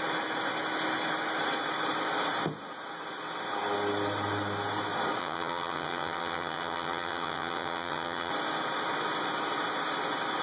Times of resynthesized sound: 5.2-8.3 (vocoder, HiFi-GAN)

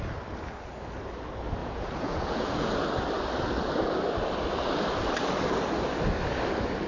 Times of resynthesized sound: 1.6-2.7 (vocoder, Vocos)